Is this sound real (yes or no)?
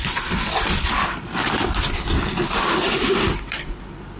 no